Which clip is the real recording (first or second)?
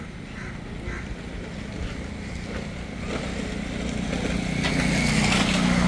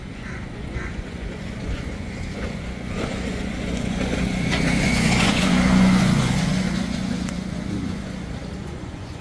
first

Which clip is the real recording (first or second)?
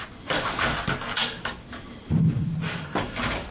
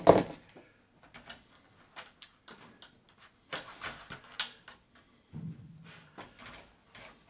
second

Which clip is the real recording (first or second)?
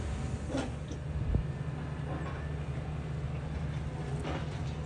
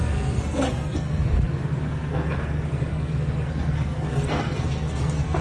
first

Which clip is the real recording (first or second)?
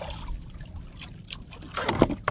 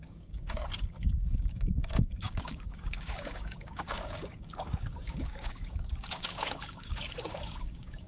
first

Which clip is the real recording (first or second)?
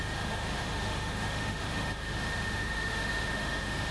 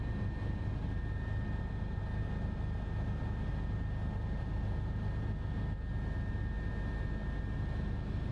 second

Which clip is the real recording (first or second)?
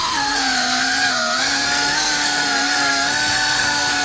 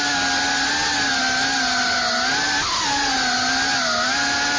second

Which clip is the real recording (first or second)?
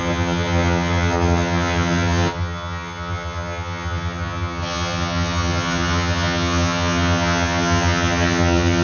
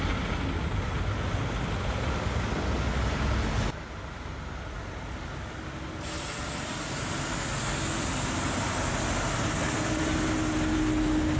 second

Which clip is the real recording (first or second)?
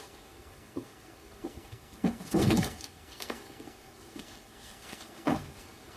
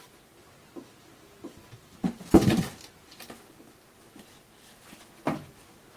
second